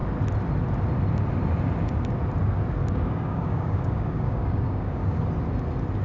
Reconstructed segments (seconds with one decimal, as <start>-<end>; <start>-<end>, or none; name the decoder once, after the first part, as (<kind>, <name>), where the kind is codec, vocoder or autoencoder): 2.8-5.2 (codec, DAC)